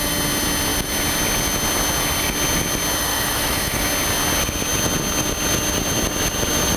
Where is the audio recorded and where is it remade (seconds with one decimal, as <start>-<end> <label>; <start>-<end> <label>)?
0.0-3.1 recorded; 3.1-3.8 remade; 3.8-6.8 recorded